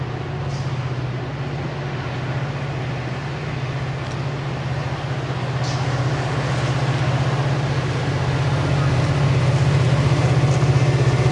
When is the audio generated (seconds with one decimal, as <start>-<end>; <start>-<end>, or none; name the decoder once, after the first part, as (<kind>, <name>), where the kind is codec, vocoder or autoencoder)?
none